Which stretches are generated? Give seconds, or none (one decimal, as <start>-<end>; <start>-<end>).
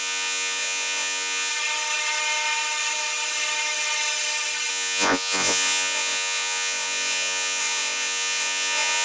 0.0-1.5; 4.7-9.0